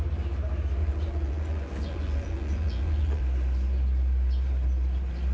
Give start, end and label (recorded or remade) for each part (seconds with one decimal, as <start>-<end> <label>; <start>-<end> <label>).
0.0-0.8 recorded; 0.8-3.2 remade; 3.2-5.3 recorded